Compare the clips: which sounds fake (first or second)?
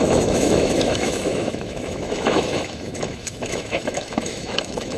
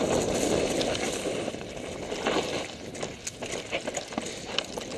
first